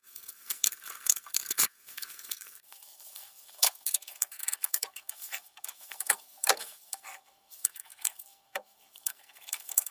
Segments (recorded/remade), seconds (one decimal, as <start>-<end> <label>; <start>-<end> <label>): 0.0-9.9 remade